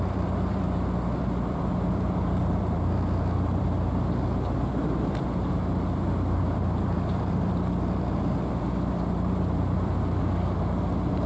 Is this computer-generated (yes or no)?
yes